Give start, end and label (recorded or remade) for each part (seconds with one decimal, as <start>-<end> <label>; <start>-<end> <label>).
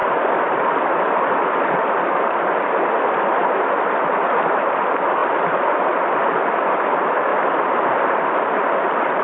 0.0-9.2 recorded